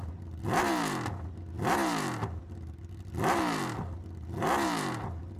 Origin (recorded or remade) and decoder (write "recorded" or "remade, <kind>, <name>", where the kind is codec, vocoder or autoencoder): recorded